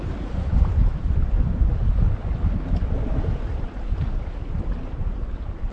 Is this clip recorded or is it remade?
recorded